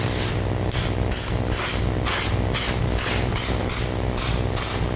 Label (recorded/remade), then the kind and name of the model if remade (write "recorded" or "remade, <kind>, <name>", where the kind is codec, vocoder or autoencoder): recorded